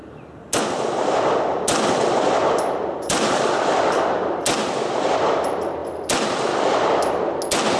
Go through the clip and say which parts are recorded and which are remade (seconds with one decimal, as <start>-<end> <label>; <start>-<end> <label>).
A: 0.0-7.8 recorded